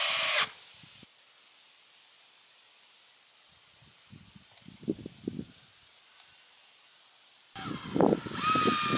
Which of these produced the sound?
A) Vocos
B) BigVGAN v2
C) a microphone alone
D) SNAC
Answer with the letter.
C